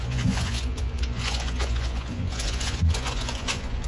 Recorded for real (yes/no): no